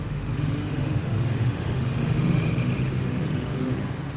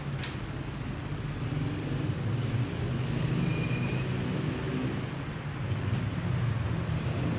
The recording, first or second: second